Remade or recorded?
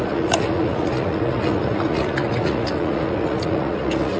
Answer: remade